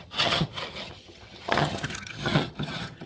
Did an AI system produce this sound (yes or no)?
yes